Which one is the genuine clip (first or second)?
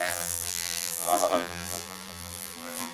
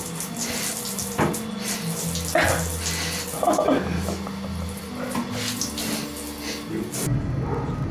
second